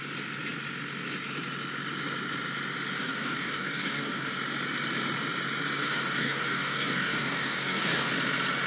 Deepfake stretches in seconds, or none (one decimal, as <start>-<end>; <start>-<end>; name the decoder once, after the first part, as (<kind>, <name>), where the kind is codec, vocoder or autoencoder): 3.0-4.3 (codec, DAC); 5.8-8.1